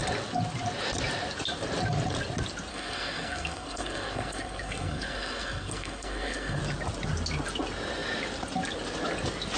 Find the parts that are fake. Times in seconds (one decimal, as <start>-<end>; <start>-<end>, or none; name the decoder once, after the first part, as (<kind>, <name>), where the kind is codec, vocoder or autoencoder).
2.7-6.6 (codec, SNAC)